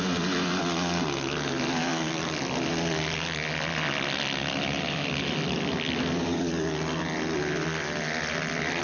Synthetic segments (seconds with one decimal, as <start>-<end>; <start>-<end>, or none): 4.4-6.5